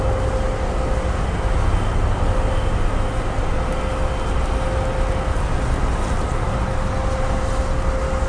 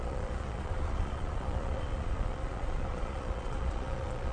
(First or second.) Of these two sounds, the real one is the first